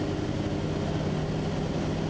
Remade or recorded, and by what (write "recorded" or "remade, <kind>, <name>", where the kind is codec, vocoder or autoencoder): recorded